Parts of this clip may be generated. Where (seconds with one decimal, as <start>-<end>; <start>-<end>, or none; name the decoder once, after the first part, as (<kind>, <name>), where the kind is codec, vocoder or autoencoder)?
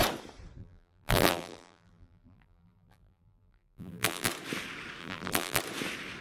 0.6-4.3 (vocoder, BigVGAN v2); 5.0-5.6